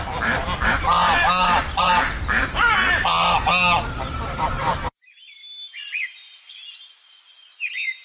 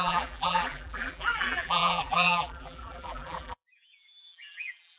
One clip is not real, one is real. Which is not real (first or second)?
second